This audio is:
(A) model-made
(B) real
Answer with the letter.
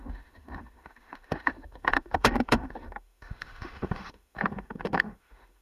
A